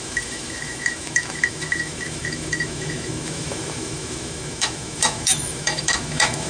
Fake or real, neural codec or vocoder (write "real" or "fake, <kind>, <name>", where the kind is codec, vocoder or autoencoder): fake, autoencoder, DAC-VAE